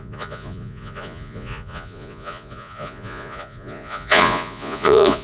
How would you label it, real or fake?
fake